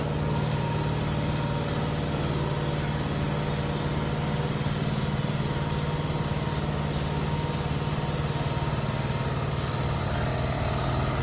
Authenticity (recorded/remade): recorded